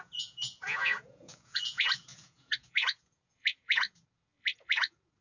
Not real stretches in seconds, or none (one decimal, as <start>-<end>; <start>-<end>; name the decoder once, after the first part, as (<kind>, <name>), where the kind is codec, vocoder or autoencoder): 0.0-5.2 (vocoder, Vocos)